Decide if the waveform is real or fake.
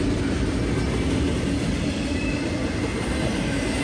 real